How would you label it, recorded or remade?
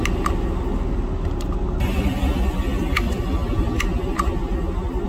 recorded